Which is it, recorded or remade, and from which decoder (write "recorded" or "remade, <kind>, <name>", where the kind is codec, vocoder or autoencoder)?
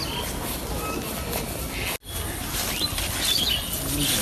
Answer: recorded